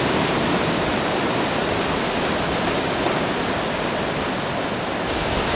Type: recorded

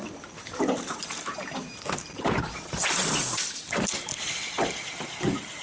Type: remade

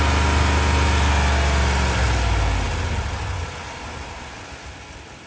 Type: recorded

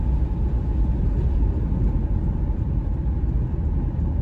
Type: recorded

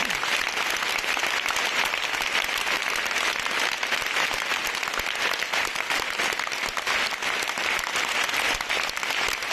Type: recorded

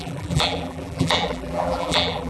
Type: remade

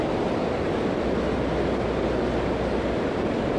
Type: recorded